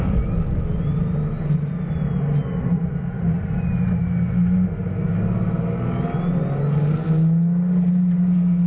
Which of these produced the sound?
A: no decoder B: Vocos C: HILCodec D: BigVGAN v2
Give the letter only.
A